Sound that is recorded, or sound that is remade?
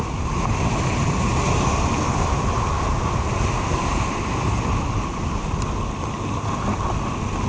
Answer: recorded